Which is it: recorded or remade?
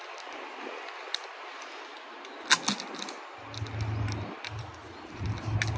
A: recorded